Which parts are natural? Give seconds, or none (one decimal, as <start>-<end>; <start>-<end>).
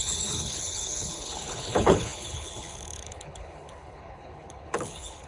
none